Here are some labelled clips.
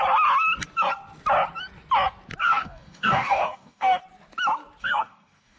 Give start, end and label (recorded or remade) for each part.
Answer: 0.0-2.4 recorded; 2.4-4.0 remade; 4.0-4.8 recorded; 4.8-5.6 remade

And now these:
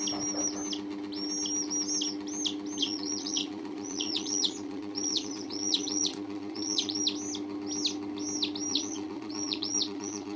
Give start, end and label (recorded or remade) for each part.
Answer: 0.0-2.8 recorded; 2.8-7.0 remade; 7.0-8.7 recorded; 8.7-10.4 remade

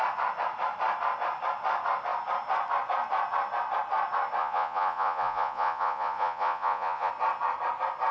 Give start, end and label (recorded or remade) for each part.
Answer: 0.0-4.4 recorded; 4.4-7.1 remade; 7.1-8.1 recorded

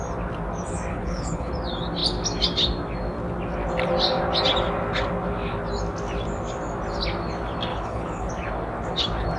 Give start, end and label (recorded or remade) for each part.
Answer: 0.0-0.9 recorded; 0.9-1.5 remade; 1.5-7.7 recorded; 7.7-8.3 remade; 8.3-9.4 recorded